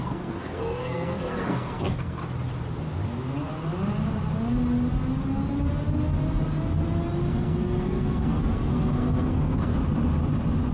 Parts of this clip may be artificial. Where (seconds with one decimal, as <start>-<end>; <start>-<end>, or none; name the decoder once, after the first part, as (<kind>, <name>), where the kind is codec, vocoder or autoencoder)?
0.0-2.2 (codec, SNAC); 7.3-9.7